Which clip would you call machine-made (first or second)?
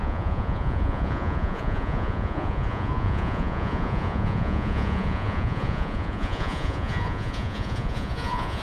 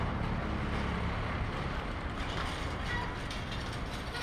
first